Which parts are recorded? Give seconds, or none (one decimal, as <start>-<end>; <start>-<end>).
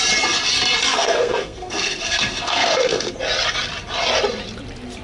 0.0-0.9; 3.1-5.0